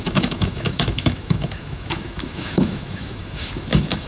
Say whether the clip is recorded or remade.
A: remade